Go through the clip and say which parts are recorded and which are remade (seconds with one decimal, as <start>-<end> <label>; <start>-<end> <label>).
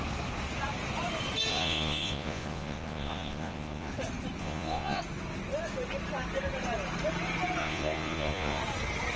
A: 0.0-1.5 recorded; 1.5-3.9 remade; 3.9-4.4 recorded; 4.4-5.0 remade; 5.0-7.6 recorded; 7.6-8.6 remade; 8.6-9.2 recorded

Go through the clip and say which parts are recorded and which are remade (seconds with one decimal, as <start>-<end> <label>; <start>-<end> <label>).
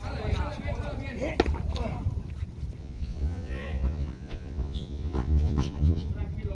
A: 0.0-2.8 recorded; 2.8-6.1 remade; 6.1-6.5 recorded